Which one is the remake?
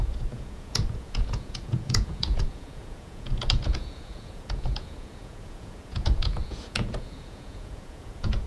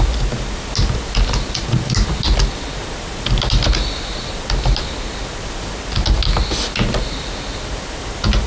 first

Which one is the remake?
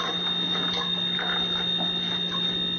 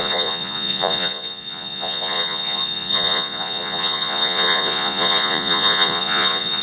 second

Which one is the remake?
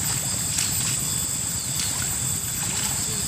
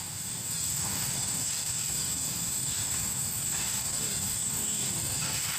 second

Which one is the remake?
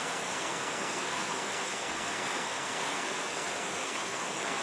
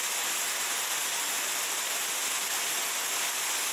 first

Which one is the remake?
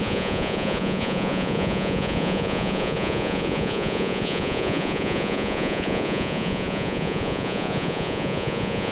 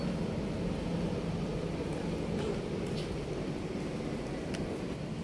first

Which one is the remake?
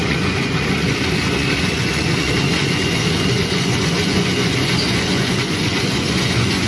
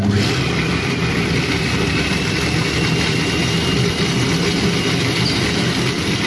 first